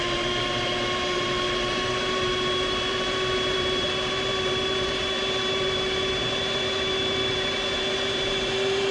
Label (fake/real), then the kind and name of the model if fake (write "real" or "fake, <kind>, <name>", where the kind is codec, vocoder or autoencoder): fake, vocoder, BigVGAN v2